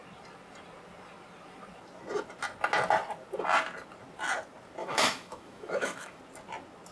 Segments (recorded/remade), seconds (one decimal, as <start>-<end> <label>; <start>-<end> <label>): 0.0-4.8 recorded; 4.8-6.2 remade; 6.2-6.9 recorded